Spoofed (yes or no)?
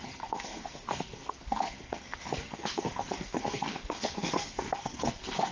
yes